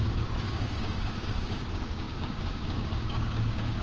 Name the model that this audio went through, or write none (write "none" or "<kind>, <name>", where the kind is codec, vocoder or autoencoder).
codec, DAC